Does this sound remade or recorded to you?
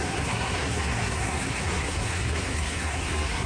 remade